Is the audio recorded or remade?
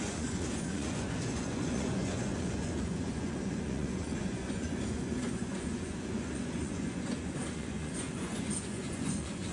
remade